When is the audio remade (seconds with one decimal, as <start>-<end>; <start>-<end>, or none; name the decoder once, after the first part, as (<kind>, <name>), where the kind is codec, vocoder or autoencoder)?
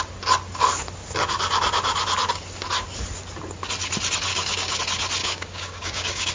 4.3-4.8 (codec, DAC); 5.2-6.3